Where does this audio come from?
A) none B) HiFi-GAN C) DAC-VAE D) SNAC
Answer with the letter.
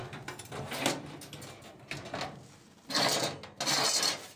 A